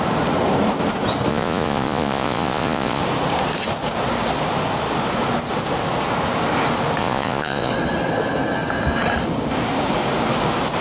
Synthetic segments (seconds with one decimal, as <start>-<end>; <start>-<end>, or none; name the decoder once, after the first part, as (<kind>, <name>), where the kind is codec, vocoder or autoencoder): 1.3-3.0 (vocoder, Vocos); 7.0-7.7